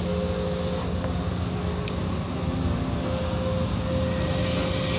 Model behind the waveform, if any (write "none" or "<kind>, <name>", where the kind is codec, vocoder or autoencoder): none